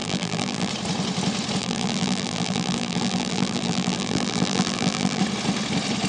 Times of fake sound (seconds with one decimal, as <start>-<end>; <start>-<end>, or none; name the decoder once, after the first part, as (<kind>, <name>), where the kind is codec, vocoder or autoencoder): 0.0-0.7 (vocoder, BigVGAN v2); 1.6-5.2